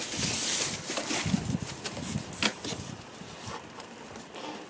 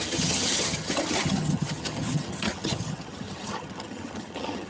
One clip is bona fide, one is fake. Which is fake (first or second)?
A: second